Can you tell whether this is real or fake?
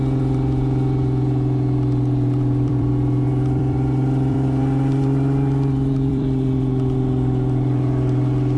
fake